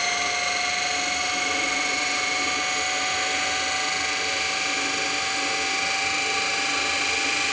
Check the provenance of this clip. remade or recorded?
recorded